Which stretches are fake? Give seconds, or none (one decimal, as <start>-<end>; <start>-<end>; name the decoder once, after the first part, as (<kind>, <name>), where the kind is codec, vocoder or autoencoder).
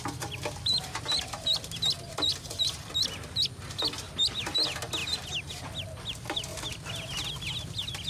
none